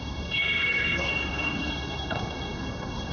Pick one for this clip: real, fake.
fake